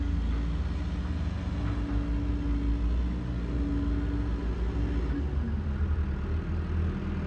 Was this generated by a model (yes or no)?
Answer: no